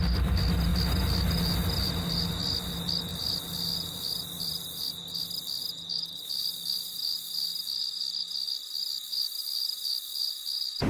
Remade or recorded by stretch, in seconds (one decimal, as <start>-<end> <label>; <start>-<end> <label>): 0.0-3.1 recorded; 3.1-7.8 remade; 7.8-10.9 recorded